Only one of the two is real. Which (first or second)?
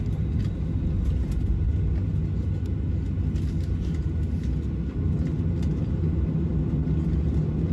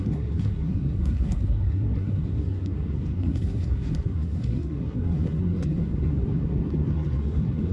first